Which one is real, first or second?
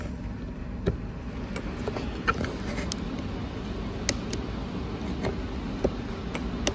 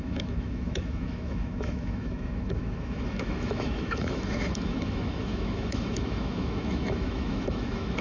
first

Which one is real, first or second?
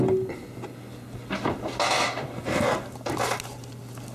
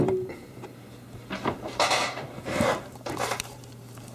first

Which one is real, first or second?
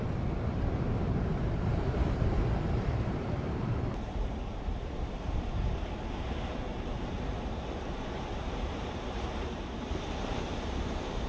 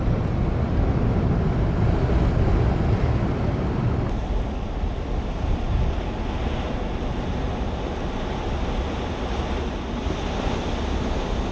second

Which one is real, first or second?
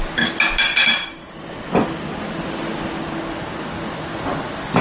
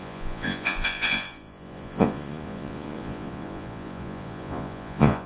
first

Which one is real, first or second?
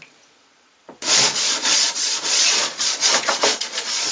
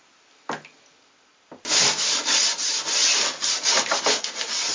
second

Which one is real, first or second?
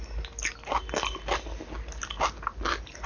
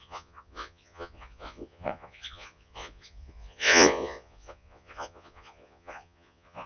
first